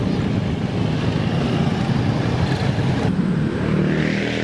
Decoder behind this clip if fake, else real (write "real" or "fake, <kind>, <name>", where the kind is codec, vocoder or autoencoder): real